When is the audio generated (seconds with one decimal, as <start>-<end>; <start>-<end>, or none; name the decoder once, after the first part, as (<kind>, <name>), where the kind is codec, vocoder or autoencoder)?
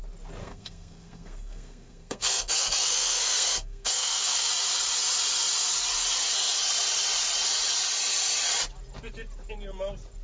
0.4-4.5 (codec, SNAC)